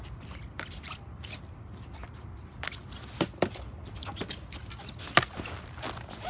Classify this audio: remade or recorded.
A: recorded